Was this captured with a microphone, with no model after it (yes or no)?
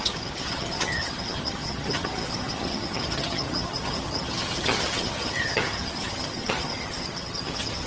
no